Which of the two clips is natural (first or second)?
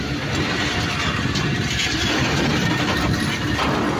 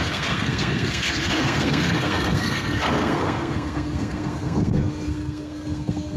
first